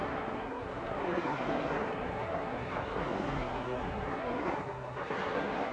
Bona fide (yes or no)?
no